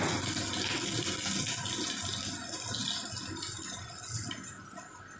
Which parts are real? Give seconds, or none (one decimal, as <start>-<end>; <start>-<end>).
0.0-5.2

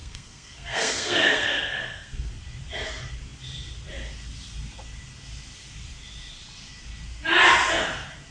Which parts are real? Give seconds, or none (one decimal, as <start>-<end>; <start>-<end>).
2.3-8.3